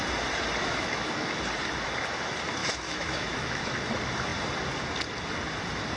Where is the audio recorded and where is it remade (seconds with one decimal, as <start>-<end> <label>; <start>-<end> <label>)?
0.0-0.6 recorded; 0.6-1.4 remade; 1.4-2.6 recorded; 2.6-3.9 remade; 3.9-6.0 recorded